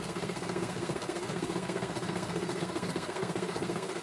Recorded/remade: remade